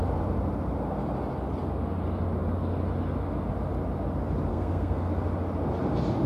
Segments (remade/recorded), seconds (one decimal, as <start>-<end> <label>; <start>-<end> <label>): 0.0-4.5 recorded; 4.5-5.1 remade; 5.1-6.3 recorded